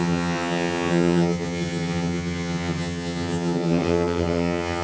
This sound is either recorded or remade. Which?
remade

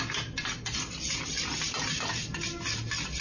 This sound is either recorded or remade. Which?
recorded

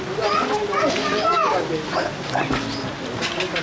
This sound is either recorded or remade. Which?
recorded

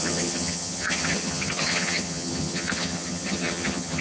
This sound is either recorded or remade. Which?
remade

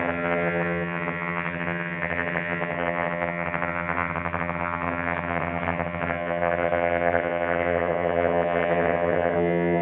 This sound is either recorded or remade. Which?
remade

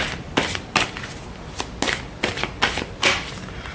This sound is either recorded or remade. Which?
recorded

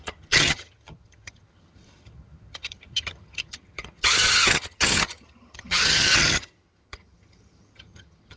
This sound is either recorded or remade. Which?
remade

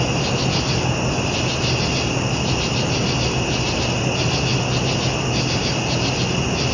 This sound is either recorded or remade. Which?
recorded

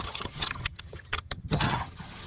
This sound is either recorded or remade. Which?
remade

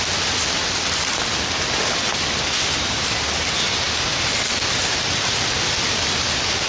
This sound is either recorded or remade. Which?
recorded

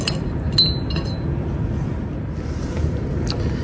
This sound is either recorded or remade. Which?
recorded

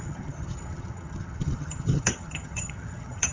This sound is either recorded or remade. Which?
remade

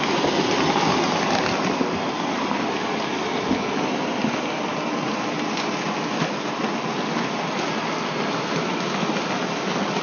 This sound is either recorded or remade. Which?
recorded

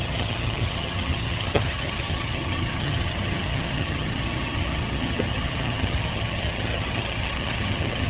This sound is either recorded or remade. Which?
remade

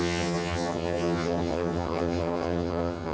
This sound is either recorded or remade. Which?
remade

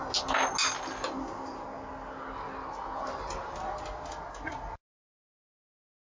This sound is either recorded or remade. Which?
recorded